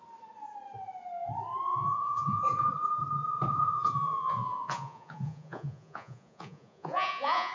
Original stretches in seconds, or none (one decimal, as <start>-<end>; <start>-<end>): 0.0-1.7; 2.4-3.5